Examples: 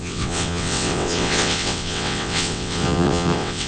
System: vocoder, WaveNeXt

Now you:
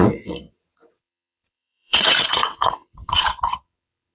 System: vocoder, WaveNeXt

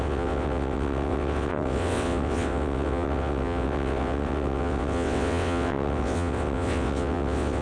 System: vocoder, WaveNeXt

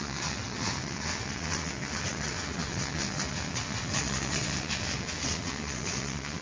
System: vocoder, WaveNeXt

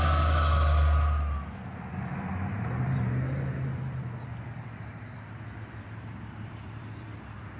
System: none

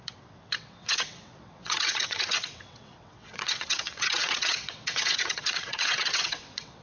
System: vocoder, WaveNeXt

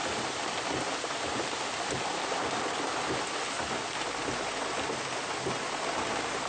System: none